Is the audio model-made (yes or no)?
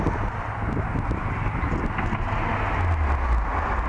no